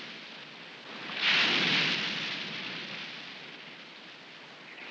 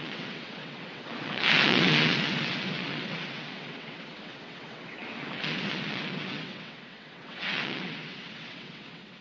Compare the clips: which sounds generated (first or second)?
second